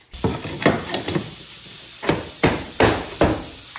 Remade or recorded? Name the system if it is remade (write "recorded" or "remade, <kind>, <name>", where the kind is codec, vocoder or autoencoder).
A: recorded